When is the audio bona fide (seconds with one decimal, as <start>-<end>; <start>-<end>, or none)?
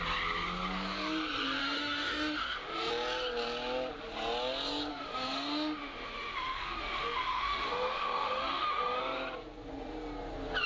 0.0-1.6; 2.9-4.9; 9.0-10.7